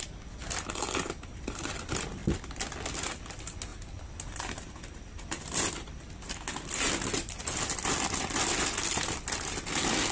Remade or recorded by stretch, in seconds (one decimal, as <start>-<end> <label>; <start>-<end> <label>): 0.0-10.1 recorded